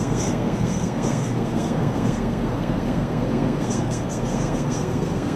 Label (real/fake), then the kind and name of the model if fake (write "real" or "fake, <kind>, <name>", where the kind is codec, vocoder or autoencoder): fake, codec, SNAC